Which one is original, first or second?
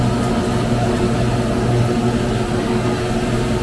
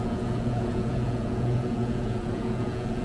first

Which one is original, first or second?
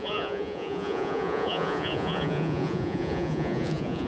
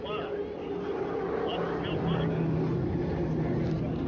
second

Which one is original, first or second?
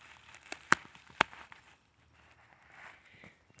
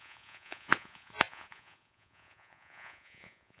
first